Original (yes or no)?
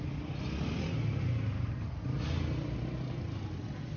yes